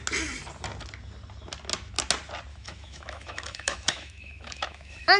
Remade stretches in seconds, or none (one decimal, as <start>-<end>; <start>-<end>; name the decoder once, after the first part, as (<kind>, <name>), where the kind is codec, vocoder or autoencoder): 2.5-5.2 (autoencoder, DAC-VAE)